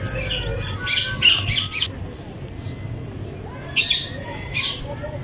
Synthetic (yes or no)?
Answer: no